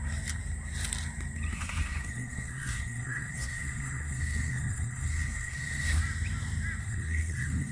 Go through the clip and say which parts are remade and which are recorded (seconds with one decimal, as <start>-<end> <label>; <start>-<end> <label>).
0.0-1.5 recorded; 1.5-6.0 remade; 6.0-6.8 recorded; 6.8-7.7 remade